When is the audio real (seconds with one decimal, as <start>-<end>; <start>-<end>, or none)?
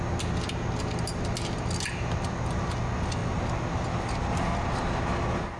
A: 0.0-5.6